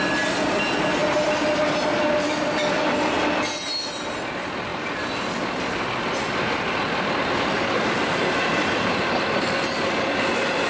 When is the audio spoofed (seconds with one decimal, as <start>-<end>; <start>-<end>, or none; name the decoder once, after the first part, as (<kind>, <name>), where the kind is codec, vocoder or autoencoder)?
none